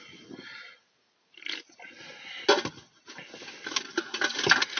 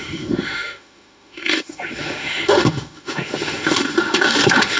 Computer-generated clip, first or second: second